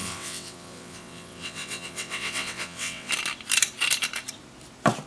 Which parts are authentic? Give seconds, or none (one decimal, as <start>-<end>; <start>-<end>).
3.1-5.1